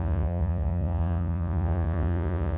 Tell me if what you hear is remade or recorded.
remade